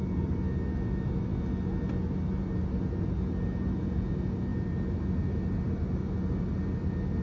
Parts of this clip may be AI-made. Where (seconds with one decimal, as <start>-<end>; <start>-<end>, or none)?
none